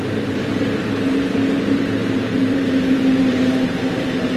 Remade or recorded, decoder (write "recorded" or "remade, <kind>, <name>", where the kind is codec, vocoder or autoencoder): remade, vocoder, BigVGAN v2